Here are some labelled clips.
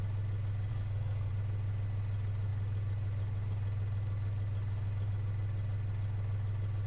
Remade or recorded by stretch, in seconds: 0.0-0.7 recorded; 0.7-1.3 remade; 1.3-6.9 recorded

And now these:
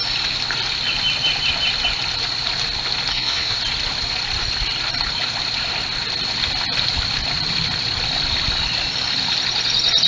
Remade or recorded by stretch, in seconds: 0.0-3.1 recorded; 3.1-3.6 remade; 3.6-10.1 recorded

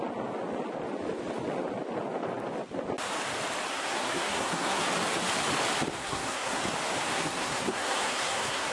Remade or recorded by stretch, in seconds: 0.0-3.7 recorded; 3.7-4.8 remade; 4.8-6.0 recorded; 6.0-6.6 remade; 6.6-7.1 recorded; 7.1-8.7 remade